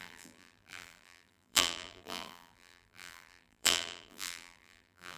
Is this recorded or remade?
remade